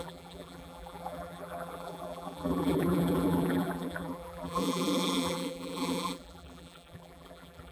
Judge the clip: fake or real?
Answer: fake